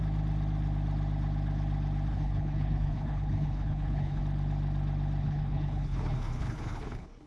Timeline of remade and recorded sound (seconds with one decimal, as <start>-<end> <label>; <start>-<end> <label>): 0.0-2.1 recorded; 2.1-4.2 remade; 4.2-5.2 recorded; 5.2-7.3 remade